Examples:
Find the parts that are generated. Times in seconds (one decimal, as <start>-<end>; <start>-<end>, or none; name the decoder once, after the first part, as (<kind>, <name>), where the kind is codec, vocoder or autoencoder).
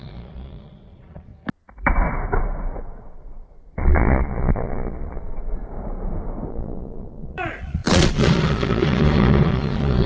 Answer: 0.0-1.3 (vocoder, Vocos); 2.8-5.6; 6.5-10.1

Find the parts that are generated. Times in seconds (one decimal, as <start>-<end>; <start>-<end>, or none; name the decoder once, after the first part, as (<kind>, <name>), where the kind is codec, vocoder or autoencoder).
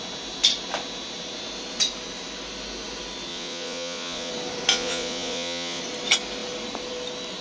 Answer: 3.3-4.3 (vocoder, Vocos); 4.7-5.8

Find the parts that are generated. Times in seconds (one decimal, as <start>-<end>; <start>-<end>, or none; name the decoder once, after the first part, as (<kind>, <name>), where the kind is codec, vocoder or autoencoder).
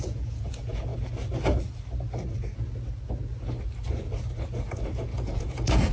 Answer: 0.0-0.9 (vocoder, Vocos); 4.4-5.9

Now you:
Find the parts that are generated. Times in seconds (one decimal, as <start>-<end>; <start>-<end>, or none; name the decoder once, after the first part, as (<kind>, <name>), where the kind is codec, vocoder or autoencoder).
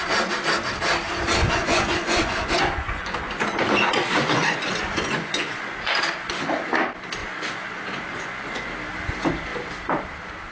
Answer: 1.4-6.0 (vocoder, Vocos); 7.2-8.7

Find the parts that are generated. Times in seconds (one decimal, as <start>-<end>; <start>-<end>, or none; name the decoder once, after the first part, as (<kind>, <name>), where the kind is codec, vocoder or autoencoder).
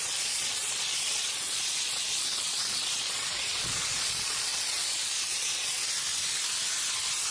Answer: 0.0-5.8 (vocoder, Vocos)